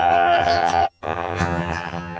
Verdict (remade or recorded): remade